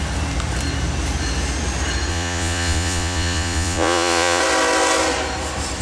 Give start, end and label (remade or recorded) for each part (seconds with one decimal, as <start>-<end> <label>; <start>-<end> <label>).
0.0-2.1 recorded; 2.1-4.4 remade; 4.4-5.8 recorded